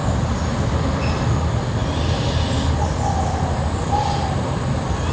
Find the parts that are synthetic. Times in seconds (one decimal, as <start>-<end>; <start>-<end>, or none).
none